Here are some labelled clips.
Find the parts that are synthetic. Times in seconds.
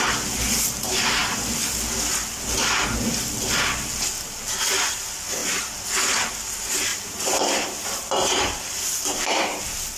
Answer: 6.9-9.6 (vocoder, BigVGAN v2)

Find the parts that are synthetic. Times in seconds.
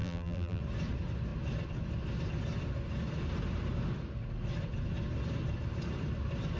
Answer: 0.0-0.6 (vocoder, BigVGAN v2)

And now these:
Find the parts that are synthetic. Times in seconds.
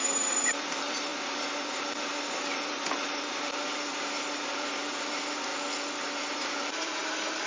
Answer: 0.0-5.5 (vocoder, BigVGAN v2); 6.3-7.5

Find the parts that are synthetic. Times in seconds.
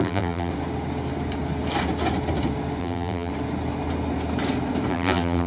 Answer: 0.0-0.5 (vocoder, BigVGAN v2); 2.8-3.3; 4.9-5.5